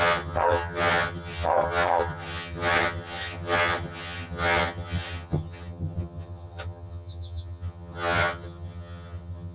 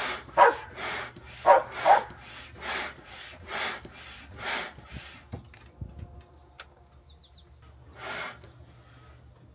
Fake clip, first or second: first